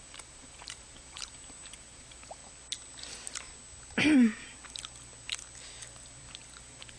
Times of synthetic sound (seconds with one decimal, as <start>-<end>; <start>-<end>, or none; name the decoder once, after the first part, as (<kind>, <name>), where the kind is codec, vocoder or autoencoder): 0.0-2.4 (vocoder, BigVGAN v2); 6.6-7.0